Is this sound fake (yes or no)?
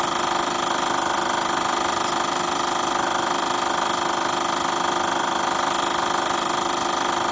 no